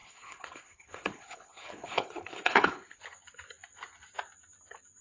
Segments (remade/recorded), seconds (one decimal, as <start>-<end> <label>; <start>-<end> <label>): 0.0-3.0 remade; 3.0-5.0 recorded